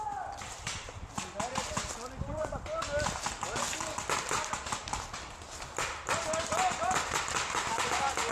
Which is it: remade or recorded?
recorded